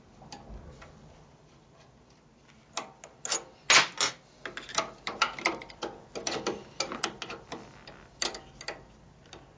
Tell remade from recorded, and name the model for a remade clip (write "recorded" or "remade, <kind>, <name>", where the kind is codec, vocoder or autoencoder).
recorded